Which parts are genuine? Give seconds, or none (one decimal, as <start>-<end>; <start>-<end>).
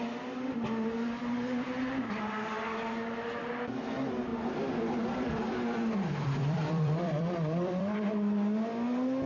0.0-4.3; 8.1-9.3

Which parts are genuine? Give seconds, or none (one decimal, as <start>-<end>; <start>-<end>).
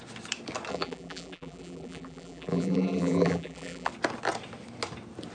0.0-0.7; 3.9-5.3